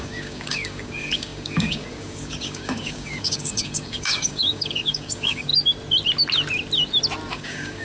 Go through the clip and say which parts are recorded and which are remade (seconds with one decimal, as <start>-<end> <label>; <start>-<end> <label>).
0.0-5.5 remade; 5.5-7.3 recorded; 7.3-7.8 remade

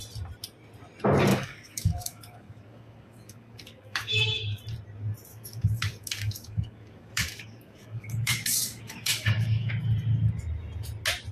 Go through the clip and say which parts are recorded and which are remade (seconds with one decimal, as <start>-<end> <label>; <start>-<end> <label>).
0.0-1.3 recorded; 1.3-4.6 remade; 4.6-5.3 recorded; 5.3-9.7 remade; 9.7-11.3 recorded

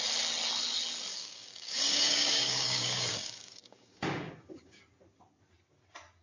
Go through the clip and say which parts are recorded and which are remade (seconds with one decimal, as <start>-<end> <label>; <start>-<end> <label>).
0.0-1.1 recorded; 1.1-4.8 remade; 4.8-6.2 recorded

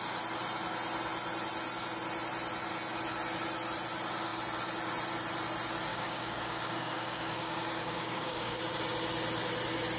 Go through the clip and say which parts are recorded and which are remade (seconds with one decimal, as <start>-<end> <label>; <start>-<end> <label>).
0.0-5.9 recorded; 5.9-8.6 remade; 8.6-10.0 recorded

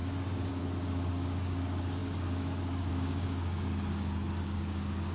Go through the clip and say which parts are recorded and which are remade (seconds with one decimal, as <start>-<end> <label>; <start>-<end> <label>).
0.0-5.1 remade